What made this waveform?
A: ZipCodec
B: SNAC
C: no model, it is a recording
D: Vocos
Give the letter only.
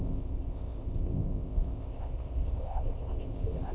A